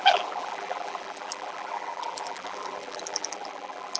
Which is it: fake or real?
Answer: fake